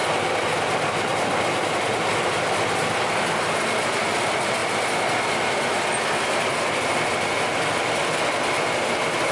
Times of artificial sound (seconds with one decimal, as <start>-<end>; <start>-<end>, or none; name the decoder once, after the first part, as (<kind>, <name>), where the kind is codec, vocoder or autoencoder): 2.4-4.6 (vocoder, BigVGAN v2); 6.8-9.3